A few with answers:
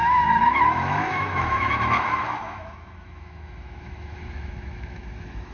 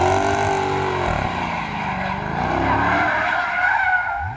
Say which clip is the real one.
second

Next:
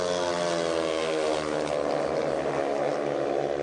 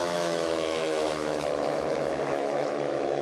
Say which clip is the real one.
first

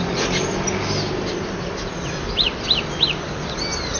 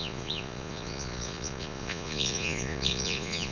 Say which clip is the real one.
first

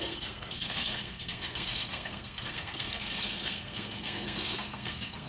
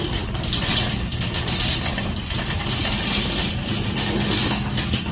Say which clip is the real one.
second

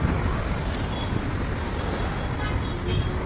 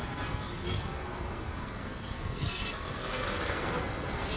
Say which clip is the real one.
first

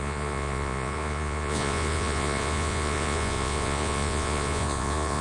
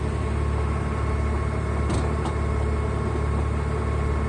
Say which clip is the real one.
second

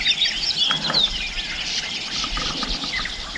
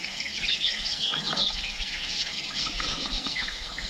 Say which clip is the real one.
first